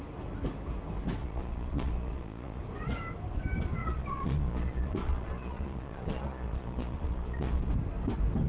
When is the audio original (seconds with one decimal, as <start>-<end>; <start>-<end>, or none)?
0.0-1.2; 2.6-3.8; 7.7-8.5